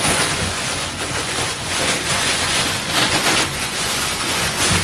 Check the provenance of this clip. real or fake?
fake